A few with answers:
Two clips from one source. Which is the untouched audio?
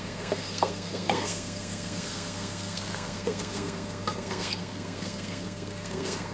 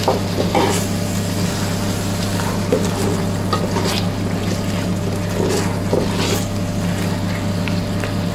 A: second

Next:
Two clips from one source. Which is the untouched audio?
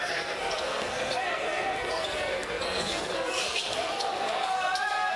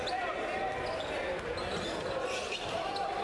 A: second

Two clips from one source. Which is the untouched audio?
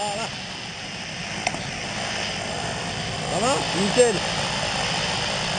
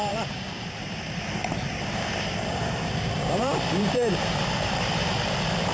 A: first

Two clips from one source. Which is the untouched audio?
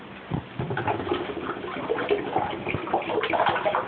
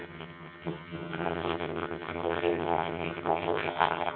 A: first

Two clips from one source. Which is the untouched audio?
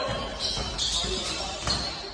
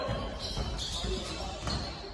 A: first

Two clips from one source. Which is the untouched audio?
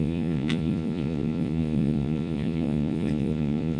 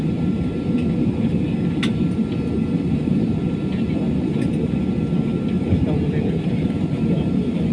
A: second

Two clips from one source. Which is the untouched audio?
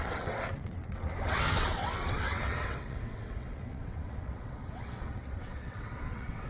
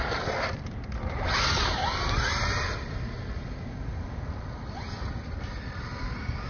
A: second